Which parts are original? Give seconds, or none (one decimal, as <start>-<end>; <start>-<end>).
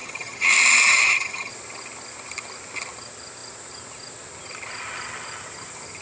0.5-0.9; 1.5-6.0